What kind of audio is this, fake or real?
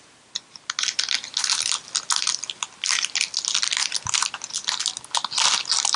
real